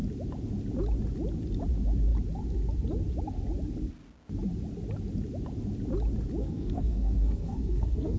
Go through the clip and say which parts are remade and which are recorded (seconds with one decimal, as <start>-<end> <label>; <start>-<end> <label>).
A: 0.0-6.4 recorded; 6.4-8.2 remade